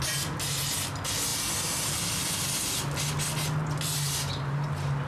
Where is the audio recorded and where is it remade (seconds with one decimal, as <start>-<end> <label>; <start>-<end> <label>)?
0.0-5.1 recorded